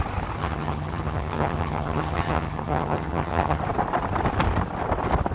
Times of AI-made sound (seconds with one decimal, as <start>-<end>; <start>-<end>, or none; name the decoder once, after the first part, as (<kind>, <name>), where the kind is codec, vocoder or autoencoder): 0.4-3.6 (vocoder, HiFi-GAN)